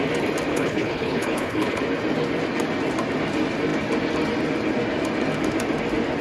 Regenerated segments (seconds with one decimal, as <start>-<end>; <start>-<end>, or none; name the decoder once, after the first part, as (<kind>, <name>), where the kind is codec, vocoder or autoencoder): 0.5-1.8 (codec, HILCodec)